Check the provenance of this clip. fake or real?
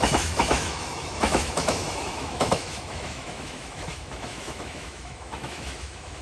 fake